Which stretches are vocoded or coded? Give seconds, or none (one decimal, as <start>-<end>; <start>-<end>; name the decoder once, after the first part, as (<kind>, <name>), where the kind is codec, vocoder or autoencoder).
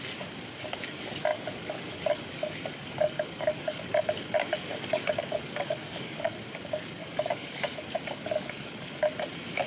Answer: 1.3-4.0 (codec, DAC); 4.7-6.3; 7.0-9.0